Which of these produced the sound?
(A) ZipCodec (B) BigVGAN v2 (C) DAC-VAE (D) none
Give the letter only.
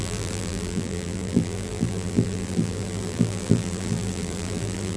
B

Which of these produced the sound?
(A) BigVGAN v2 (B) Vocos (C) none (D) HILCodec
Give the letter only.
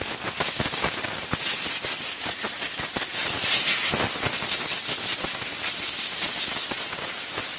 C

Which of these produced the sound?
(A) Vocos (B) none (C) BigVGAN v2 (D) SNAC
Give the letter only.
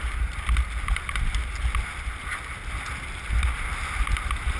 B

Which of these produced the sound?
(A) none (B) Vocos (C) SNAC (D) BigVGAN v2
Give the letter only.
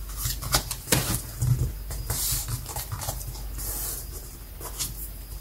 A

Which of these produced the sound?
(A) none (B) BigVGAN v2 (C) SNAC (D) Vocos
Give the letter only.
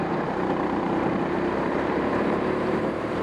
B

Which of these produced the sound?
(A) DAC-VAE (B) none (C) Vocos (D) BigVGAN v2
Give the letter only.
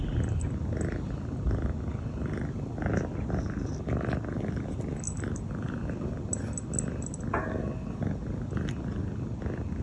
B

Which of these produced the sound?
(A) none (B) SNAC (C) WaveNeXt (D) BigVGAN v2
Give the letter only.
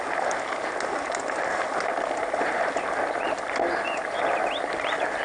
A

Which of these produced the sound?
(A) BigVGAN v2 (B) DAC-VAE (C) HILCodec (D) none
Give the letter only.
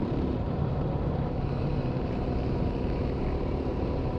A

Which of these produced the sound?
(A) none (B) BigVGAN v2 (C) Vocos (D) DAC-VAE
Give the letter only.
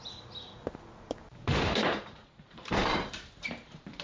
B